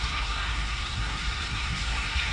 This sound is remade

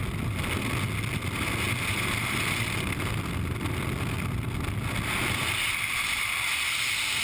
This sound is recorded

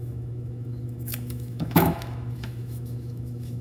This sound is remade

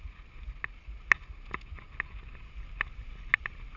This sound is recorded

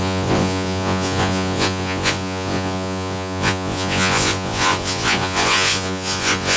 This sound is remade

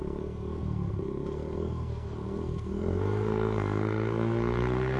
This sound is remade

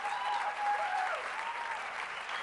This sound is remade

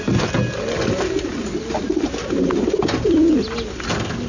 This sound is recorded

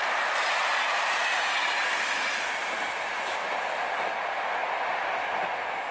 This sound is remade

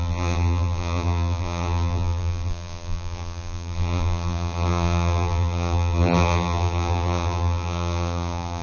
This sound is remade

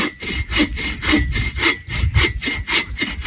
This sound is recorded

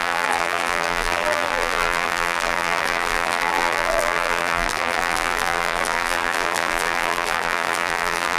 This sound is remade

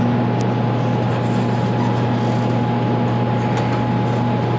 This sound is recorded